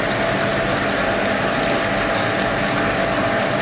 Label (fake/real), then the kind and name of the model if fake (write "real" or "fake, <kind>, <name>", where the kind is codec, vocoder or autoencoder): real